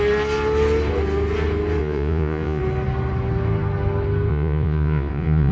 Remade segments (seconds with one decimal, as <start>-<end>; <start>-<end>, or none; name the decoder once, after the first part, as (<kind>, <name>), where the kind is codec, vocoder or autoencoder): 1.8-2.6 (vocoder, Vocos); 4.3-5.5